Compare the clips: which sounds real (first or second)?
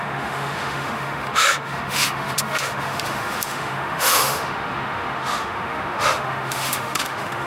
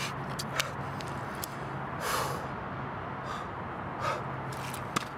second